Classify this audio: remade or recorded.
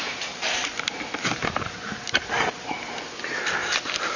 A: remade